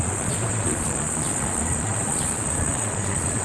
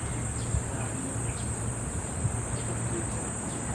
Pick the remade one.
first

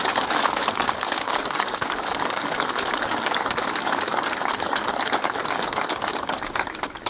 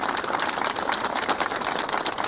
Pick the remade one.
first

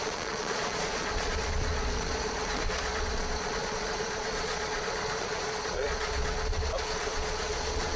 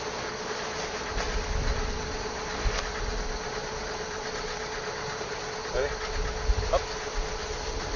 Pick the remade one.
first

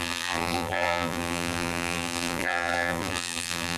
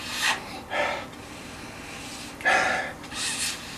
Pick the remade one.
first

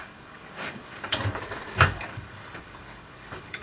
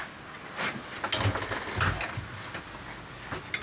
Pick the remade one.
first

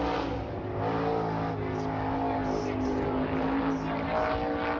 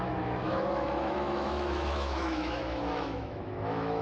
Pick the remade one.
second